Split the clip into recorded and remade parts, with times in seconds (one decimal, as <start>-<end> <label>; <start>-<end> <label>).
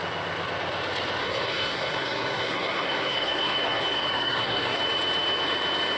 0.0-1.2 recorded; 1.2-4.8 remade; 4.8-6.0 recorded